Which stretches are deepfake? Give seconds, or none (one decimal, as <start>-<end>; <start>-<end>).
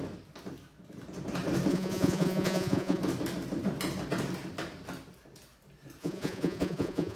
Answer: 1.7-3.0; 6.0-7.2